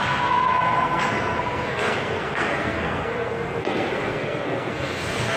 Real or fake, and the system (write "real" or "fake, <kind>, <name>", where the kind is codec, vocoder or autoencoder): fake, codec, SNAC